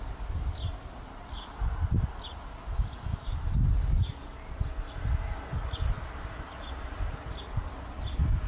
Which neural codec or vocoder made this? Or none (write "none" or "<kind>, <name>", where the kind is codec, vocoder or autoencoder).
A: none